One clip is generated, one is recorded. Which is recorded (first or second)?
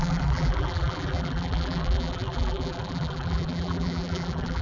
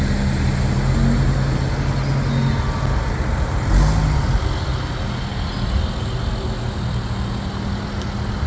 second